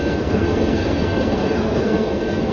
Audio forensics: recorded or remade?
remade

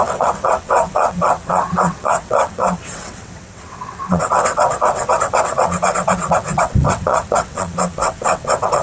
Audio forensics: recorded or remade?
remade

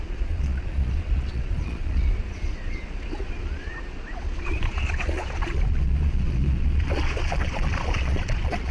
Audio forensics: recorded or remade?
remade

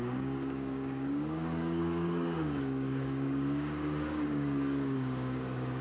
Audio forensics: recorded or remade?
remade